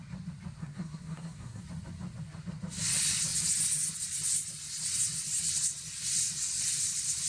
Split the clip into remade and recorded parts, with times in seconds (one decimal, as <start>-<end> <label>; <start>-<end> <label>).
0.0-0.6 recorded; 0.6-1.6 remade; 1.6-7.3 recorded